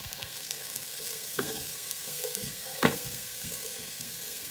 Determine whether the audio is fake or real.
fake